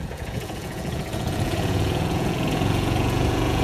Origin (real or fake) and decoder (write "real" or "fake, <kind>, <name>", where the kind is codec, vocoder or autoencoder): fake, vocoder, Vocos